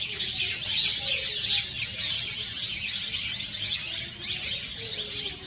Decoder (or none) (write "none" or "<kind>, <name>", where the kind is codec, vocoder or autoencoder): none